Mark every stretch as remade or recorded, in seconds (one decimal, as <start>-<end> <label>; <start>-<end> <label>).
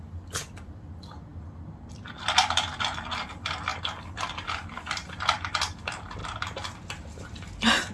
0.0-7.9 recorded